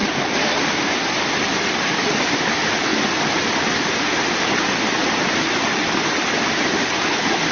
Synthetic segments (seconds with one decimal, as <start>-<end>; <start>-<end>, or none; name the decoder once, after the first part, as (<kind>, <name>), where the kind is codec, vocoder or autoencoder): none